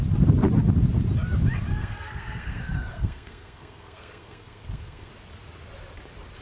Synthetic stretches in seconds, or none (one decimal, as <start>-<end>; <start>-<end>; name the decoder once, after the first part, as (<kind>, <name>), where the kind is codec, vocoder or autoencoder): 1.7-5.1 (codec, SNAC)